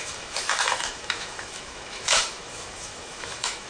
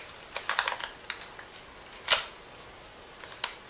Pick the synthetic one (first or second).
first